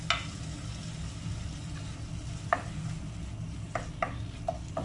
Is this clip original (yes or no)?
yes